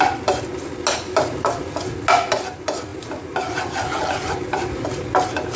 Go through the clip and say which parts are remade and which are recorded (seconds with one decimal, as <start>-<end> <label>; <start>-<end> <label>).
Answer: 0.0-5.6 recorded